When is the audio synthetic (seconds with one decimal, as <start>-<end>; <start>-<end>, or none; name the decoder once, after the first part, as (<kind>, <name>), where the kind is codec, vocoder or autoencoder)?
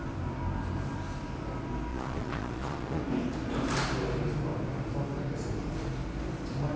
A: 1.9-3.0 (vocoder, Vocos)